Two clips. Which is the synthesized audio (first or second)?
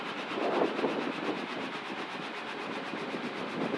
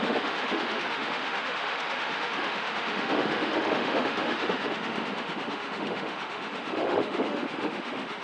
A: second